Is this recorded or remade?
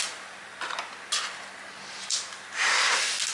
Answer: recorded